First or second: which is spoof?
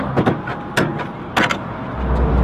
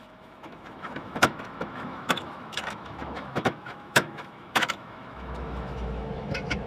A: second